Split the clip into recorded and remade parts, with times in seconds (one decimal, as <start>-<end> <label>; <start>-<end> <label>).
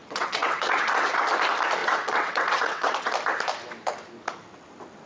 0.0-1.2 remade; 1.2-1.8 recorded; 1.8-3.1 remade; 3.1-5.1 recorded